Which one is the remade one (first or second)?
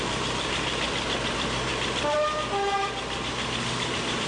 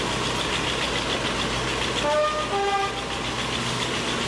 first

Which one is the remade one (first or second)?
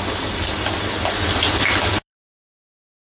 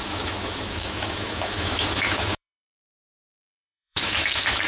second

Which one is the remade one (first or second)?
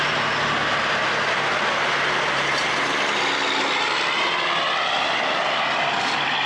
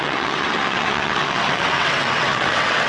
second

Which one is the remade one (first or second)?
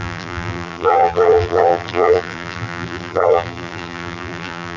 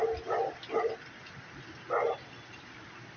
first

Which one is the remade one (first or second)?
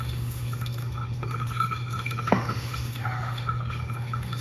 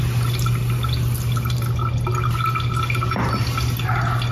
first